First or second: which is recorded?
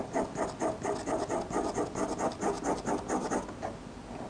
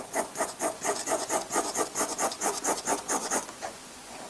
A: first